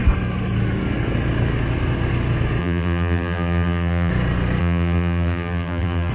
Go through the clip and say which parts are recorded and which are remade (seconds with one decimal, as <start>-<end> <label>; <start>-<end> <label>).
0.0-2.6 recorded; 2.6-4.1 remade; 4.1-4.6 recorded; 4.6-6.1 remade